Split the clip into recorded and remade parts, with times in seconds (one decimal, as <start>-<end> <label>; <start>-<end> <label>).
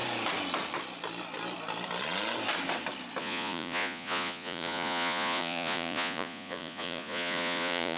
0.0-3.2 recorded; 3.2-8.0 remade